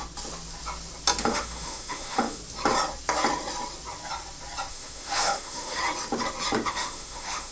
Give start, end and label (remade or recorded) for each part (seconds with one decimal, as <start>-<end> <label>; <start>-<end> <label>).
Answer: 0.0-1.2 recorded; 1.2-2.4 remade; 2.4-4.7 recorded; 4.7-5.8 remade; 5.8-6.7 recorded; 6.7-7.5 remade